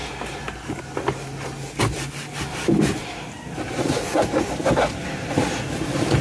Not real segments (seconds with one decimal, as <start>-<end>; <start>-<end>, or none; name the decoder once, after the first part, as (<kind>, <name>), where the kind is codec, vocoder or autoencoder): none